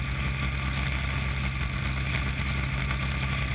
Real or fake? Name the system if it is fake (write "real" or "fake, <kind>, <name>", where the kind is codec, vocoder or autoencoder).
real